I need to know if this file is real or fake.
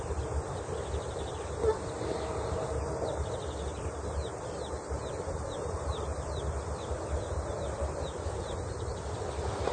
real